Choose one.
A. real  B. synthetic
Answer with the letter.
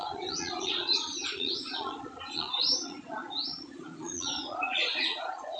B